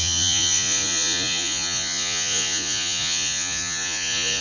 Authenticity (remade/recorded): remade